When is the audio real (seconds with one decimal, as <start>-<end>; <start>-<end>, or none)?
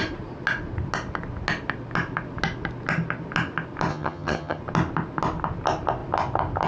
0.0-3.9; 4.6-6.7